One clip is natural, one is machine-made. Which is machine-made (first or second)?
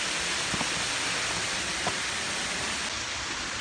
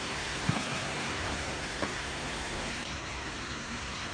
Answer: second